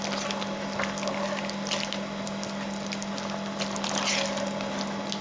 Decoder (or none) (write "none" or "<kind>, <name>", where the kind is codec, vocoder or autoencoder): none